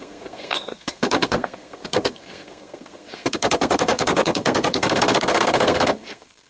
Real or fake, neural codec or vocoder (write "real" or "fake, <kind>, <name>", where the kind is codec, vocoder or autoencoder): fake, codec, SNAC